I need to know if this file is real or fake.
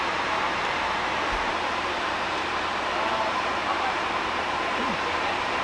fake